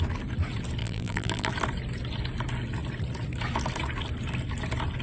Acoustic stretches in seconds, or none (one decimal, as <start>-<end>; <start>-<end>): 0.0-0.8; 1.5-5.0